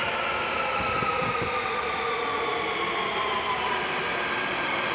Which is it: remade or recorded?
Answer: recorded